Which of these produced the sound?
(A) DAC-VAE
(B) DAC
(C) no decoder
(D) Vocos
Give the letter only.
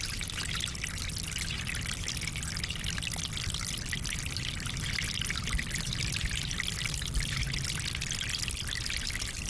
C